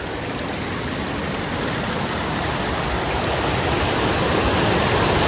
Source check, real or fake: real